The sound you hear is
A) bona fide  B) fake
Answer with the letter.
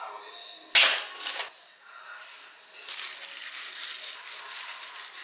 A